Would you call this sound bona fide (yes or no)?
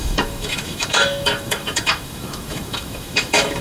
no